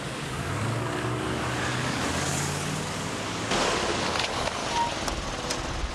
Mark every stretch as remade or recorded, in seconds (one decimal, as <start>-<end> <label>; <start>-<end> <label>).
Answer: 0.0-4.6 remade; 4.6-5.9 recorded